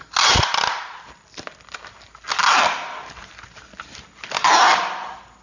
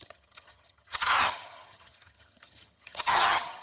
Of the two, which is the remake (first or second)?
second